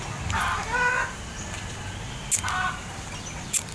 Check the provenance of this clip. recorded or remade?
recorded